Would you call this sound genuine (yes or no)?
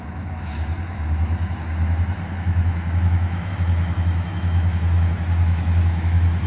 no